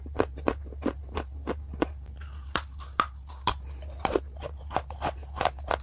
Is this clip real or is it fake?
real